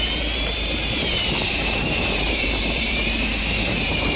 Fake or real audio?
fake